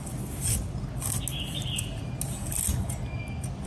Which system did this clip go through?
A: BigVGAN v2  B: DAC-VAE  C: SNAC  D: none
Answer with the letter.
D